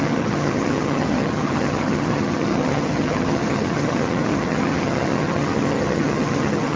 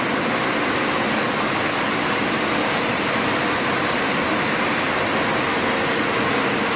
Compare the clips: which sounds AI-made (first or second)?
first